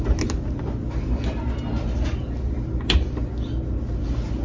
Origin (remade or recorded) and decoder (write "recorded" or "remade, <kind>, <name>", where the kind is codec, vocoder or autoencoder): recorded